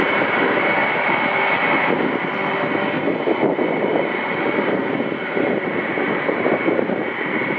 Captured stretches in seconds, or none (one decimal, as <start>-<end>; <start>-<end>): 0.8-3.8